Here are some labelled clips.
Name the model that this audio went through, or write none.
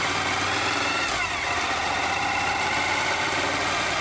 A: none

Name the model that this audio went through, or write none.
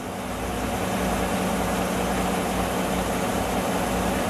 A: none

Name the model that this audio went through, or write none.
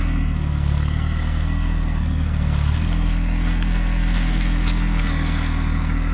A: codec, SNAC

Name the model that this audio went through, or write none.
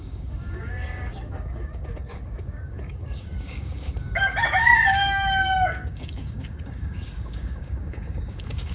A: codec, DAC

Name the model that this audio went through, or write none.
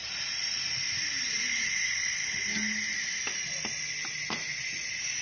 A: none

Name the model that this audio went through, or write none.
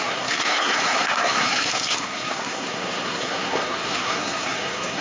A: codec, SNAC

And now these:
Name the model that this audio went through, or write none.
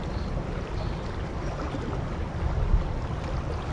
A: none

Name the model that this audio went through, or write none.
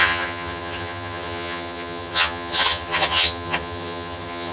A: vocoder, HiFi-GAN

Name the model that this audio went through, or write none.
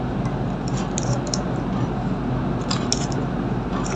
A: none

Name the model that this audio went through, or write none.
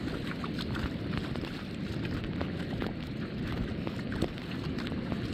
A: none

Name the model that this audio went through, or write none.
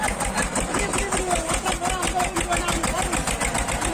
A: none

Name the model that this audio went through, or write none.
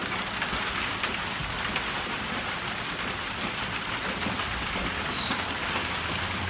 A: none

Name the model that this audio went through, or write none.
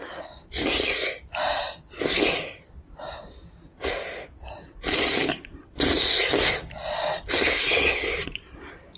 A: none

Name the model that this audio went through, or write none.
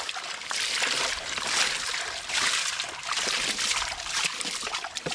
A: vocoder, BigVGAN v2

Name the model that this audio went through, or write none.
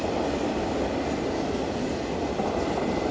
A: none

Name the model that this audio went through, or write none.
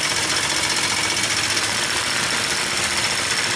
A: none